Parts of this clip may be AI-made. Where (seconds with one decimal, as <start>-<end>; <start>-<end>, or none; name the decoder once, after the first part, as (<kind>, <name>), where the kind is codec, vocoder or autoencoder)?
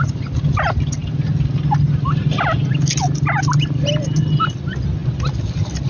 none